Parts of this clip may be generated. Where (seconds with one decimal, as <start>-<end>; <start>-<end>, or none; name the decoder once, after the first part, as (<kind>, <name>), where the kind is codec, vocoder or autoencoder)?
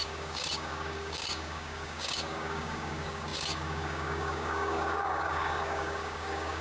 0.0-6.6 (codec, DAC)